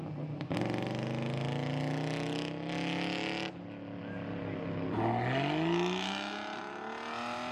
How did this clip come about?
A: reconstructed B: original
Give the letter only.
B